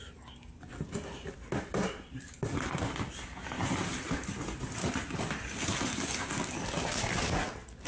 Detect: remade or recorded recorded